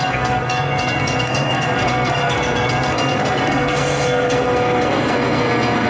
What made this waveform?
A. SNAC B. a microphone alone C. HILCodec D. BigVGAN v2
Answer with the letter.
A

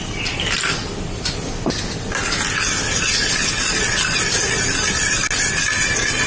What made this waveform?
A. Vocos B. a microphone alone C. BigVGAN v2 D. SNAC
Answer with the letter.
B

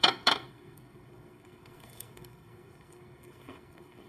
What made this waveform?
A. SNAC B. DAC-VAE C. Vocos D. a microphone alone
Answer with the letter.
A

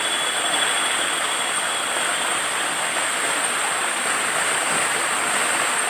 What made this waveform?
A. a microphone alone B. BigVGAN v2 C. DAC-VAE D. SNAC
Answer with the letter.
A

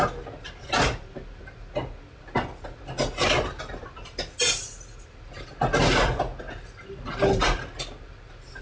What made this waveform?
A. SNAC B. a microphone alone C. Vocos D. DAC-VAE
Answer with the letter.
B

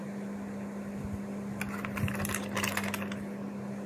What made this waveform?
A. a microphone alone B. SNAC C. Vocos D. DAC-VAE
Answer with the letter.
A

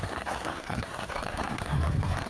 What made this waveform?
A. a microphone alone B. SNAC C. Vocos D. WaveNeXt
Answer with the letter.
B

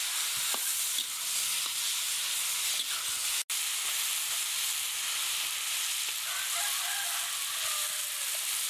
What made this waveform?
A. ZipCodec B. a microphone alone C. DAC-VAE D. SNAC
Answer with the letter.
B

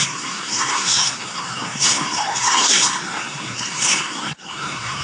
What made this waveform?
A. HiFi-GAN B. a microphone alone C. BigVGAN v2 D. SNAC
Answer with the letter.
D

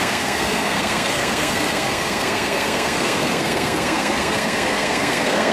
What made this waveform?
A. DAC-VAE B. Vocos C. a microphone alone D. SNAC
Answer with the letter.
D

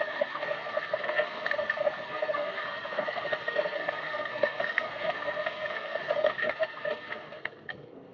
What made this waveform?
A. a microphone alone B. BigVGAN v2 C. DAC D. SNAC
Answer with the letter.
D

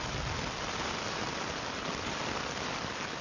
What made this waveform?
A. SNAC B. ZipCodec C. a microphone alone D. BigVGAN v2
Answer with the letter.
C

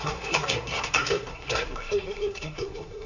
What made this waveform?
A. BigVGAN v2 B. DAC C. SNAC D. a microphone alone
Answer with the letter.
C